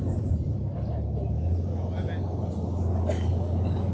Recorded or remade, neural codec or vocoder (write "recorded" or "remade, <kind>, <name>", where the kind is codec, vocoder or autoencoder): recorded